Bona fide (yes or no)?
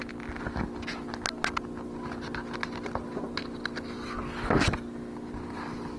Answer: yes